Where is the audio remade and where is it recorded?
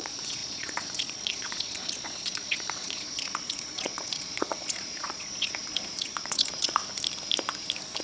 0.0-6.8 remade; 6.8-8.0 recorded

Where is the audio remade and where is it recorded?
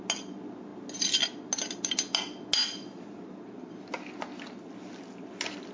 0.0-5.7 recorded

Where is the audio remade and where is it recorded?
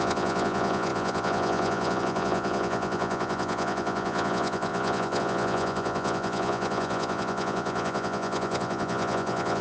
0.0-9.6 remade